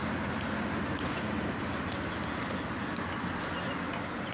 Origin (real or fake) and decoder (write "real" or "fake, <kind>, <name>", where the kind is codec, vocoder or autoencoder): real